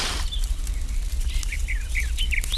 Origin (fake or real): real